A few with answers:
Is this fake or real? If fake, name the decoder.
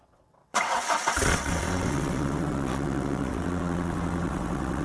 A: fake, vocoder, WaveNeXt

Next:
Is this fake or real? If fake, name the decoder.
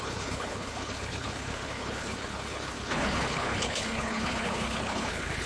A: fake, codec, HILCodec